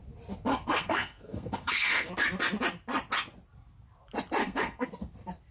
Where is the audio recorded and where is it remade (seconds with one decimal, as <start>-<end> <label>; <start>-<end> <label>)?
0.0-0.5 recorded; 0.5-2.1 remade; 2.1-4.4 recorded; 4.4-4.9 remade; 4.9-5.5 recorded